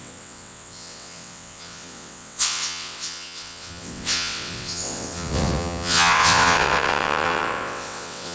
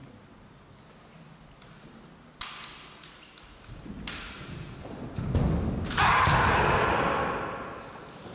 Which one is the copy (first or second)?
first